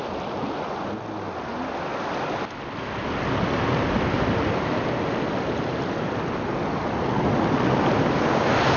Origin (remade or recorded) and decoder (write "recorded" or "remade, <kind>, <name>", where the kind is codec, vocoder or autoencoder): recorded